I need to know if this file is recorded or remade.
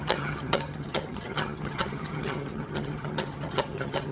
remade